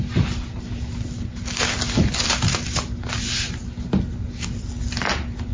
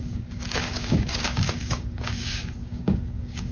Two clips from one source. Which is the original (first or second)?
first